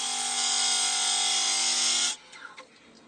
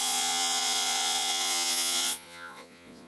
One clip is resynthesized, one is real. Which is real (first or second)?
first